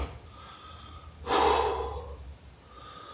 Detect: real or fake real